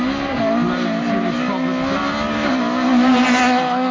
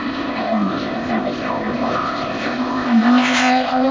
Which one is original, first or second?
first